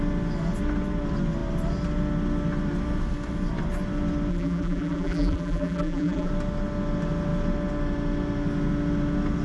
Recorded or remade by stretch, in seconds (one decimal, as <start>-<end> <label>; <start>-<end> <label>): 0.0-4.3 recorded; 4.3-6.3 remade; 6.3-9.4 recorded